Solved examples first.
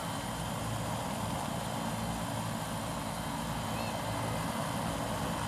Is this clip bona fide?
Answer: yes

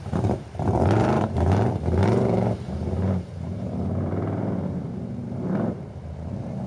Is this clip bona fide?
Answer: no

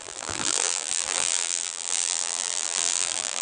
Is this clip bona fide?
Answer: no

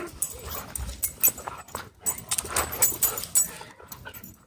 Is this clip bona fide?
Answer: yes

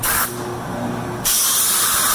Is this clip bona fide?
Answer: yes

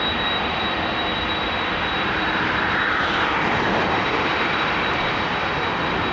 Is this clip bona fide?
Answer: no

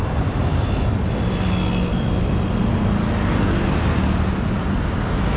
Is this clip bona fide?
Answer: yes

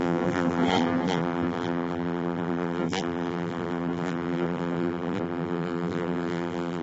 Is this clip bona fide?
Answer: no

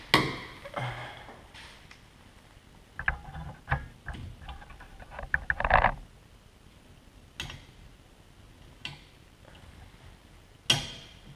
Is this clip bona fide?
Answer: yes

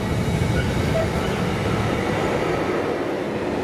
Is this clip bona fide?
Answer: yes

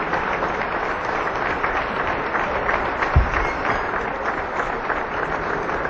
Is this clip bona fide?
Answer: no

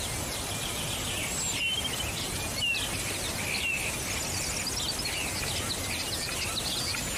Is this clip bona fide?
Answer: yes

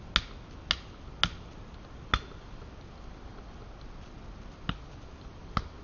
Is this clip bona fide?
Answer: yes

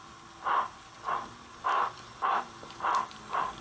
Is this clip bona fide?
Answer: yes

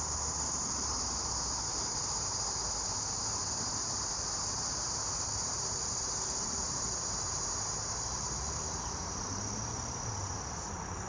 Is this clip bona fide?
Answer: no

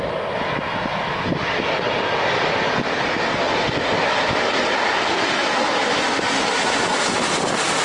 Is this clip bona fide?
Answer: yes